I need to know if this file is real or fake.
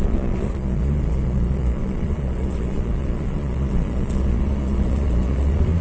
fake